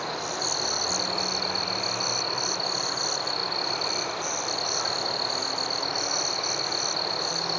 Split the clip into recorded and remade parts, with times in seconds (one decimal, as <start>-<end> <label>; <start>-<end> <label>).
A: 0.0-7.6 recorded